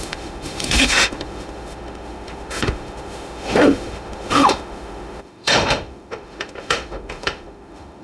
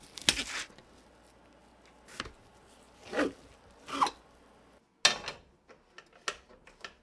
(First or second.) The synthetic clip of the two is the first